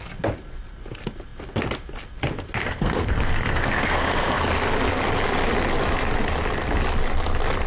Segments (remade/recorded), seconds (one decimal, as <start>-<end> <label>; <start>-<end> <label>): 0.0-2.6 recorded; 2.6-4.5 remade; 4.5-7.7 recorded